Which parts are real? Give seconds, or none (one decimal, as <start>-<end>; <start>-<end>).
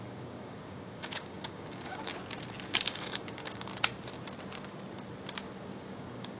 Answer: 2.1-2.6; 3.7-5.7